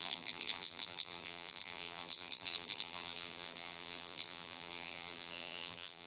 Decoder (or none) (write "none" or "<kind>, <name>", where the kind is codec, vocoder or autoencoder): vocoder, BigVGAN v2